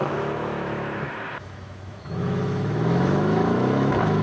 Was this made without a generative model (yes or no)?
no